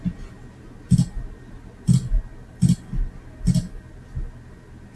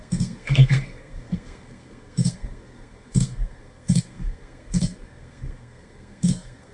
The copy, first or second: second